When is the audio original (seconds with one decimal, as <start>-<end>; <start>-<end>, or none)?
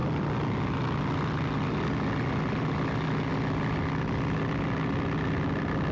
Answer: 0.0-5.9